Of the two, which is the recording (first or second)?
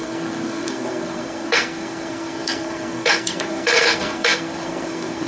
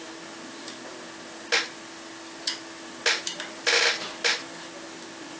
second